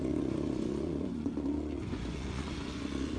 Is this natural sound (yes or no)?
no